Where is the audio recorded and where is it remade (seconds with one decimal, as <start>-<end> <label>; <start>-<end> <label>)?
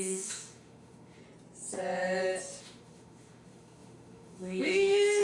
0.0-1.2 remade; 1.2-2.6 recorded; 2.6-5.2 remade